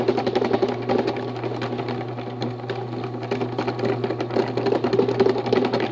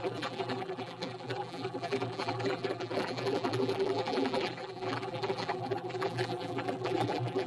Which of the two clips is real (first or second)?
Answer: first